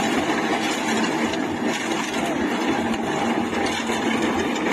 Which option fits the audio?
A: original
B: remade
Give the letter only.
B